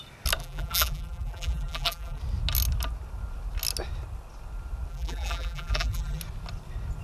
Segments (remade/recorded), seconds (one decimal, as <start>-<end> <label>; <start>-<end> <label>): 0.0-0.4 recorded; 0.4-2.2 remade; 2.2-4.9 recorded; 4.9-6.2 remade; 6.2-7.0 recorded